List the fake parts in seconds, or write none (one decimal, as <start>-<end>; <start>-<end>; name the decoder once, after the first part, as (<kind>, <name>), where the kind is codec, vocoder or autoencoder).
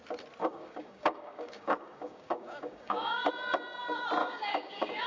0.4-3.3 (codec, DAC); 4.2-5.1